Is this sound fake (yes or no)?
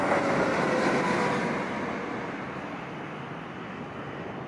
no